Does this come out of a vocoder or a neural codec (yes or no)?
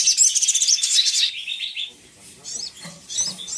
no